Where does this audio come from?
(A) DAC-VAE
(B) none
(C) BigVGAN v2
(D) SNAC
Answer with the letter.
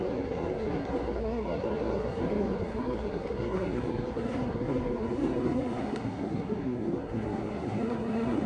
D